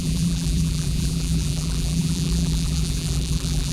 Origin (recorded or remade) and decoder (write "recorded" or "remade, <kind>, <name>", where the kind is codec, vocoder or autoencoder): remade, vocoder, BigVGAN v2